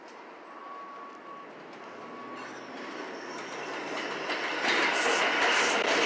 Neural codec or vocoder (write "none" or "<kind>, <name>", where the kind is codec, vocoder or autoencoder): none